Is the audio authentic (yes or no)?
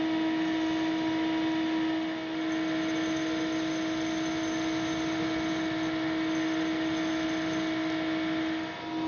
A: yes